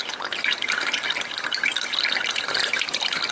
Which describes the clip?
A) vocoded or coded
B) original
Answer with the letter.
B